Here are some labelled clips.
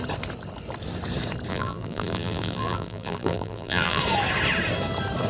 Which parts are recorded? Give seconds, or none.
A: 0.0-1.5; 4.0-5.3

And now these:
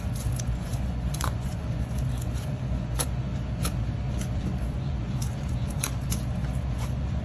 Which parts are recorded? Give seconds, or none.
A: 3.3-4.1

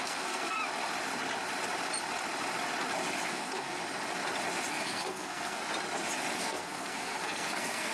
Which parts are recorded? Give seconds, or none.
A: 0.6-3.3; 3.8-4.7; 5.6-6.4

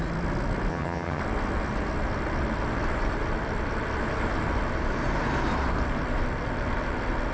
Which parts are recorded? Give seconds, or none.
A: 0.0-0.7; 1.2-7.3

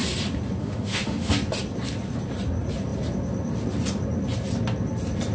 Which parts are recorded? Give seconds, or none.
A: 0.0-0.6; 1.3-5.3

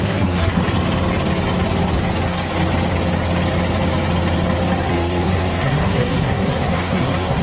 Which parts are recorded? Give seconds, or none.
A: 0.6-4.9

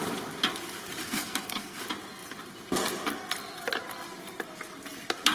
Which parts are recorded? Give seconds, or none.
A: 0.0-1.0; 1.8-5.3